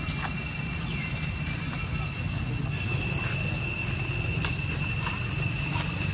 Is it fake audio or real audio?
real